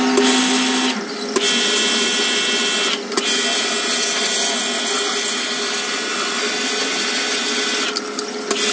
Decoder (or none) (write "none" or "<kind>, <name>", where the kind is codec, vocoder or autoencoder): none